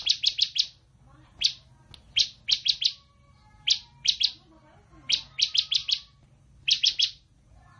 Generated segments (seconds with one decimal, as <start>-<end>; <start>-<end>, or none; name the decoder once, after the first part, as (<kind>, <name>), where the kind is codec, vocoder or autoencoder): none

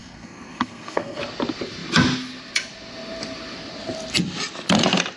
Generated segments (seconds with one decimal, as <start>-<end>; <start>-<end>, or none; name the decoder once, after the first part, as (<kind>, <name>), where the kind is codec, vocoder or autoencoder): 0.0-1.2 (codec, SNAC)

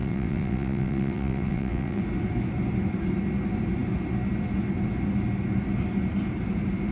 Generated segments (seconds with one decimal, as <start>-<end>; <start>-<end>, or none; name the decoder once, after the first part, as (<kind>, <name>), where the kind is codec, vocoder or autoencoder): 0.0-2.0 (vocoder, WaveNeXt)

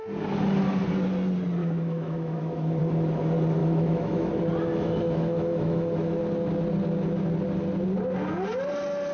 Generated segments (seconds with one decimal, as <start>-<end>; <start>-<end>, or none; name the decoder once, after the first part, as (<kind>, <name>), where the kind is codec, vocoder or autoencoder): 1.6-2.8 (autoencoder, DAC-VAE); 3.6-4.3; 4.7-6.2

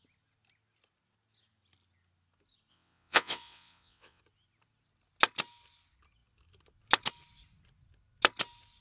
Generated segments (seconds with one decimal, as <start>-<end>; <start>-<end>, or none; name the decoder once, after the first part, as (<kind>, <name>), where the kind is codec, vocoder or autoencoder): 2.7-4.2 (vocoder, WaveNeXt)